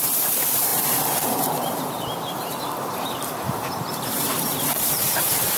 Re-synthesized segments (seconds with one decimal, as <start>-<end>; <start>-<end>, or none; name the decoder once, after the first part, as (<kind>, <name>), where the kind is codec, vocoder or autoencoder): 0.0-5.6 (vocoder, BigVGAN v2)

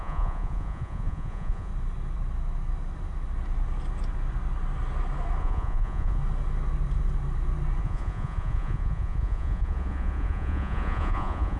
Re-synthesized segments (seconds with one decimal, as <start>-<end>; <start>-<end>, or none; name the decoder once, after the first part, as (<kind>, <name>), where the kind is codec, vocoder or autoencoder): 0.0-1.7 (vocoder, Vocos); 5.4-6.2; 7.8-11.6

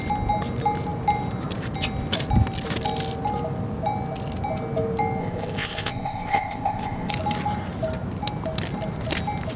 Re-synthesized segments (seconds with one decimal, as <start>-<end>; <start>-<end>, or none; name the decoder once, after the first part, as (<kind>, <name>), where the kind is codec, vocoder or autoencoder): 5.2-7.1 (codec, ZipCodec)

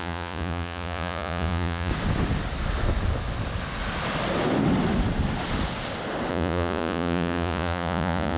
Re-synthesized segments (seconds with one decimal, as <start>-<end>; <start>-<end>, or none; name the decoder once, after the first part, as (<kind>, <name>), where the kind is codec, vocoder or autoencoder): 0.0-1.9 (vocoder, Vocos); 6.3-8.4

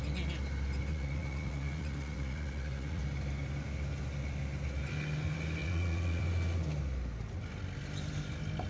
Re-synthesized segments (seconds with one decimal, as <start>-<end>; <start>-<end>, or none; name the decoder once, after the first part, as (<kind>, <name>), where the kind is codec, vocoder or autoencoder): 0.9-3.0 (vocoder, Vocos); 5.6-6.2

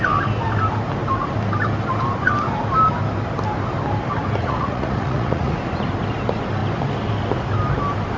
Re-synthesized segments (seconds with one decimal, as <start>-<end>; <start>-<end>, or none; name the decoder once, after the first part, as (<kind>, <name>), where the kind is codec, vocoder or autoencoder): 4.4-5.5 (vocoder, Vocos)

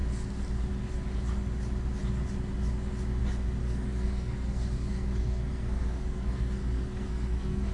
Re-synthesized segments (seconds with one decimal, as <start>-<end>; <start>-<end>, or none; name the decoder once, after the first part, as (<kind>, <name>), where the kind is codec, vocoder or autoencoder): 3.6-7.7 (codec, SNAC)

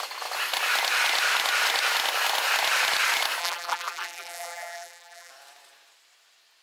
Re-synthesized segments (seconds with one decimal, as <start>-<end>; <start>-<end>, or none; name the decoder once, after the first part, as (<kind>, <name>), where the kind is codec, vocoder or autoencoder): 3.4-5.3 (vocoder, BigVGAN v2)